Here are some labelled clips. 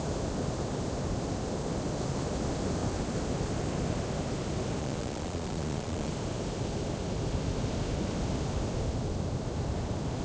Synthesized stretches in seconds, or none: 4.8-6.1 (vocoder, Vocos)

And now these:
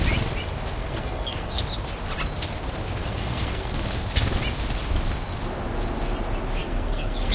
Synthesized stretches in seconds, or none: 0.8-1.6 (codec, SNAC); 3.0-3.7; 6.6-7.3

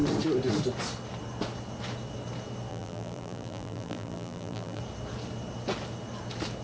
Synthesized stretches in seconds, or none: 2.7-4.8 (vocoder, BigVGAN v2)

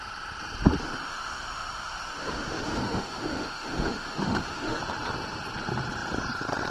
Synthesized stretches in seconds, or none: 0.8-4.8 (autoencoder, DAC-VAE)

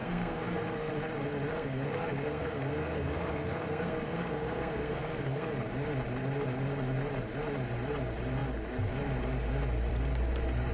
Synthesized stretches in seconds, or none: 0.0-0.9 (codec, SNAC); 1.5-5.5

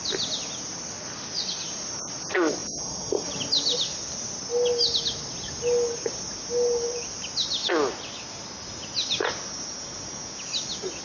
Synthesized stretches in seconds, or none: none

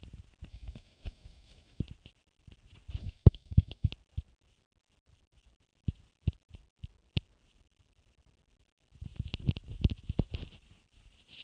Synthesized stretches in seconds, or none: 0.5-1.8 (codec, DAC); 3.0-3.9

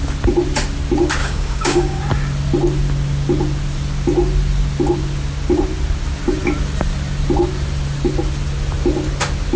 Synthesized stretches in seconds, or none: 1.2-2.0 (codec, DAC)